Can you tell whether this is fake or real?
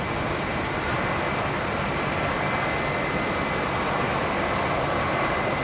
real